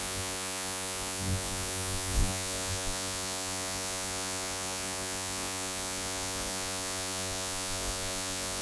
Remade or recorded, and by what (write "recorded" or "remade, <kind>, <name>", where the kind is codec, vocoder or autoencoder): remade, vocoder, Vocos